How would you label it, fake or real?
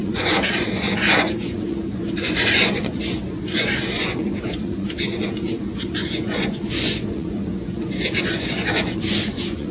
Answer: fake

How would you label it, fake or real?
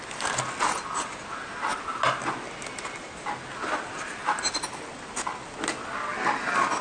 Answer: real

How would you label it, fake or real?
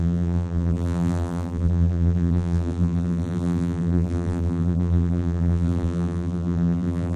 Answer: fake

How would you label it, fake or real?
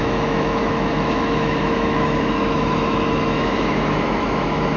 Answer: fake